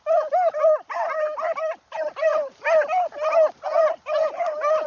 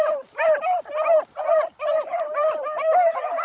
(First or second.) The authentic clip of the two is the first